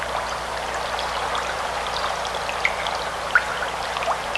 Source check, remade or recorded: recorded